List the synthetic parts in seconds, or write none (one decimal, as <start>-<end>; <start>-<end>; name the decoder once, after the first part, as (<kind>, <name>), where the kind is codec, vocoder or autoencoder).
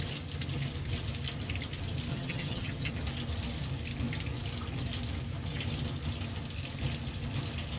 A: 2.1-2.9 (vocoder, HiFi-GAN)